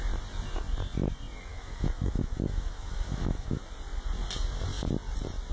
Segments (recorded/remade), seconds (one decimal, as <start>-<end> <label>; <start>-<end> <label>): 0.0-1.5 recorded; 1.5-3.6 remade; 3.6-5.5 recorded